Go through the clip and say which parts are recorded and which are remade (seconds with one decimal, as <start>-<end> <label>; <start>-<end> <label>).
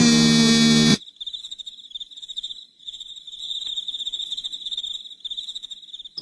0.0-0.9 recorded; 0.9-3.4 remade; 3.4-6.2 recorded